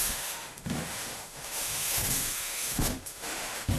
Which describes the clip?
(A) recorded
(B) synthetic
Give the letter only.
B